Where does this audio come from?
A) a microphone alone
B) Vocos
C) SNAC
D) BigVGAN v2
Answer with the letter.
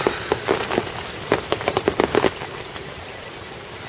A